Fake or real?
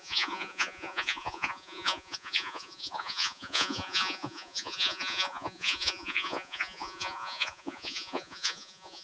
fake